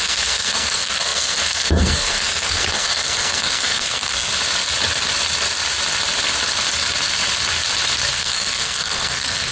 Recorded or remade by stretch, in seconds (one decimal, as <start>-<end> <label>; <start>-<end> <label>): 0.0-4.3 remade; 4.3-8.1 recorded; 8.1-9.5 remade